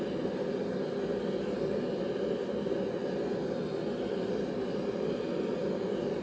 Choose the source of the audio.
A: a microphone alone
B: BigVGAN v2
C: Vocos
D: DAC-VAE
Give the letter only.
A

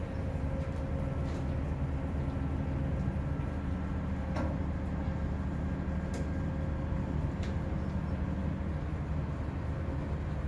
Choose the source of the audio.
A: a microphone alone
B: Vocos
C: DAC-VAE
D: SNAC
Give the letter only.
A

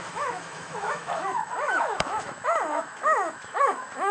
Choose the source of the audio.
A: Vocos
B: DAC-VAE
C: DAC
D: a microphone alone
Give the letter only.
B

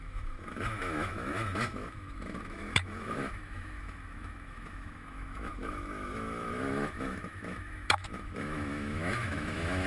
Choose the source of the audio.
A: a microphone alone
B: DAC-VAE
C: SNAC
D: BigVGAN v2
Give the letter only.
B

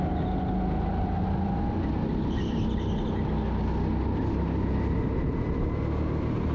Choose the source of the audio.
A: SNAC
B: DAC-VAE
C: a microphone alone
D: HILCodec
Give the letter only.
C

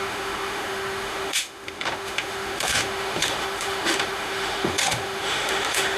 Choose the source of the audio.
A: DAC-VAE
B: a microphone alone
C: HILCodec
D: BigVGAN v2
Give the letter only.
A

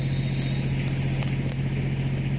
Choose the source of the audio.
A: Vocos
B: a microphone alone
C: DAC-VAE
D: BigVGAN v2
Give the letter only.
B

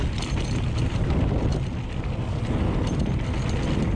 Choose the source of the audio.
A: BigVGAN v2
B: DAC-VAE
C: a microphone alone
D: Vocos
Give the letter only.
C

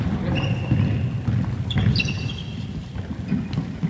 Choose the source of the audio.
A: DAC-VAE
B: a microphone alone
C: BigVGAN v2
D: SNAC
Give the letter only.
B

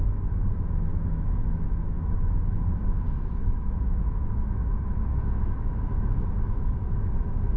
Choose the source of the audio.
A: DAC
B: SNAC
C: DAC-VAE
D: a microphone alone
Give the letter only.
C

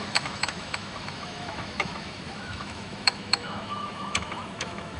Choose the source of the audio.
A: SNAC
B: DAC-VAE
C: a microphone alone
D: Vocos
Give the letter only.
B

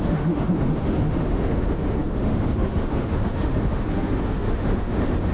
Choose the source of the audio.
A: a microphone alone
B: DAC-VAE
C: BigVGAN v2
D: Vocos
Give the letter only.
B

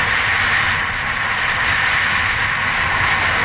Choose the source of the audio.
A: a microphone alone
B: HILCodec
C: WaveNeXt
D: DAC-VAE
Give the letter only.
A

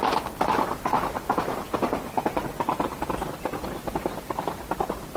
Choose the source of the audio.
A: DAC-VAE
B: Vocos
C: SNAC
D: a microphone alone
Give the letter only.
D